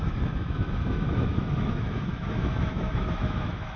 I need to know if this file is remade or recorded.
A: remade